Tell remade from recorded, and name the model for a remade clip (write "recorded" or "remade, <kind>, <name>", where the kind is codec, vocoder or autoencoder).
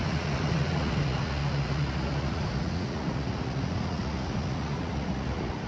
remade, vocoder, Vocos